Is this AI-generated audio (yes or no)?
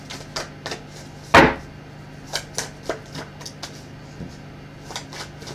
no